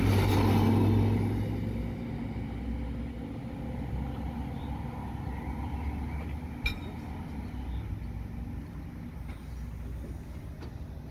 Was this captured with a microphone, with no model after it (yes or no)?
yes